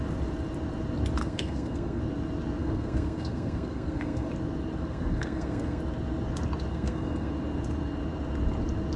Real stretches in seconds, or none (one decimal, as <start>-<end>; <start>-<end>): 0.0-1.2; 2.0-2.6; 4.3-4.8; 5.8-6.7; 7.3-9.0